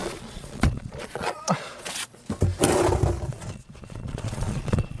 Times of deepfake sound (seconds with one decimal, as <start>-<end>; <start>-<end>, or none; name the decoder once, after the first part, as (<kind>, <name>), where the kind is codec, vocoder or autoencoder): 0.0-2.2 (vocoder, Vocos); 3.3-5.0